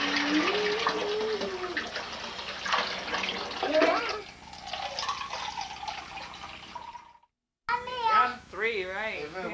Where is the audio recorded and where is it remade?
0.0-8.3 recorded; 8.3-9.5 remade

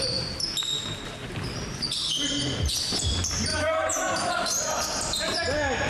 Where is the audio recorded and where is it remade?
0.0-3.5 recorded; 3.5-4.3 remade; 4.3-5.9 recorded